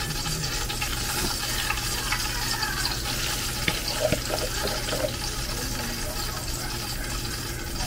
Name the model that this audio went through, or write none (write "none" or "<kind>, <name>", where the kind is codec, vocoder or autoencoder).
none